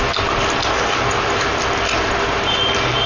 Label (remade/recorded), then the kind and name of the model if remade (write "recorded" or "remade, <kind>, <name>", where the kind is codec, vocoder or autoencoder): recorded